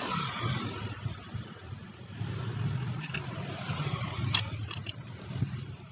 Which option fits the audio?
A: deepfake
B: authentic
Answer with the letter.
A